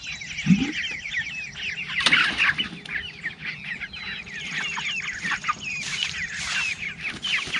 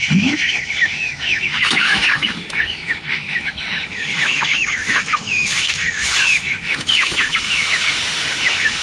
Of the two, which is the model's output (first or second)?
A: second